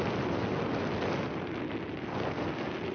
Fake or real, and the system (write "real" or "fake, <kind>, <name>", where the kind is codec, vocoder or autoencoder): real